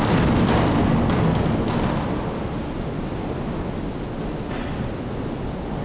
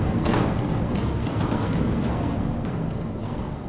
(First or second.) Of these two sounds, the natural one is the first